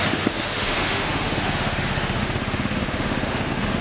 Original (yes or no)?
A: no